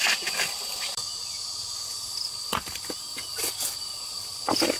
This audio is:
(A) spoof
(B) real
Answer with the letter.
A